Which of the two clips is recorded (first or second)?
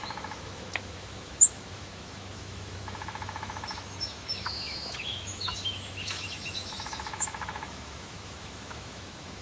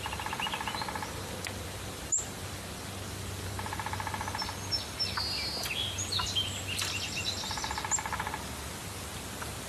second